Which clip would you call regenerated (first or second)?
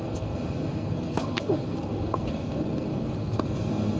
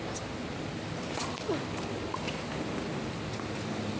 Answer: first